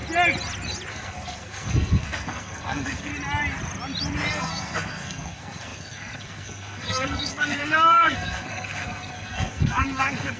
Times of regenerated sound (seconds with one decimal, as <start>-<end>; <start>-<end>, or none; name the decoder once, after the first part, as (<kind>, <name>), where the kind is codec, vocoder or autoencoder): 0.9-3.1 (codec, SNAC); 4.3-10.4